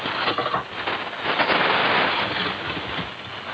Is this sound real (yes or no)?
yes